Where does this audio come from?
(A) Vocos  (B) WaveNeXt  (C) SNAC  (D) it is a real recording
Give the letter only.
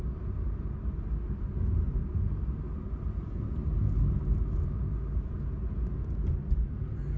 D